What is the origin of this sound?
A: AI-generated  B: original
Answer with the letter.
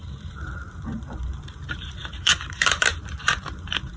A